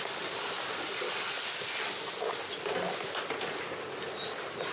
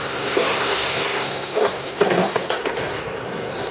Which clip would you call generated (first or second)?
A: second